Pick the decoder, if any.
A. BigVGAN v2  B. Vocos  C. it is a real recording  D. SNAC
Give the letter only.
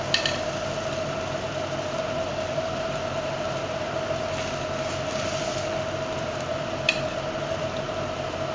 A